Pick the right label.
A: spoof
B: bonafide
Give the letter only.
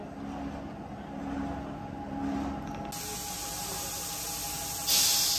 B